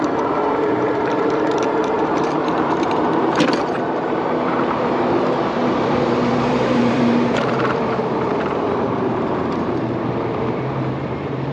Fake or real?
fake